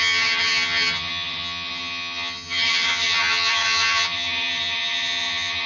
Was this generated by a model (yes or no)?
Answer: yes